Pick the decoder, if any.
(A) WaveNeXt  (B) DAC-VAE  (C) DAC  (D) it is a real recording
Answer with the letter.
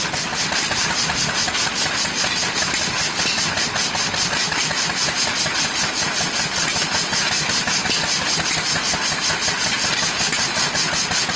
D